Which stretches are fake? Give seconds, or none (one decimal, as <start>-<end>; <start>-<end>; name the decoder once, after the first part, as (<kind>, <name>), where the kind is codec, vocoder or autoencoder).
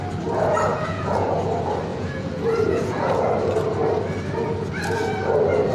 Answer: 0.7-1.3 (vocoder, Vocos); 1.9-3.2